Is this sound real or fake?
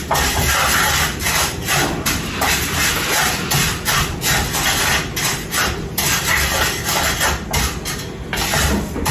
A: real